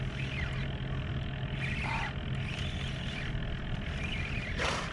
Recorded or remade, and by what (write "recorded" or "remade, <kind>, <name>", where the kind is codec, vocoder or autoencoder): recorded